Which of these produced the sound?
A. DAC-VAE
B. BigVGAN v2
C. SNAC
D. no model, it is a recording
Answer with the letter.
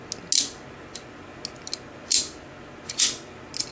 D